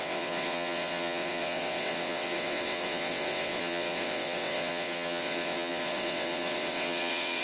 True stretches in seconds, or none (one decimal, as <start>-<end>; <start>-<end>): none